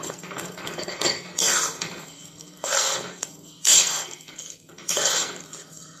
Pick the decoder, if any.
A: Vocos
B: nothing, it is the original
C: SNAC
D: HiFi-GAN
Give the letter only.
C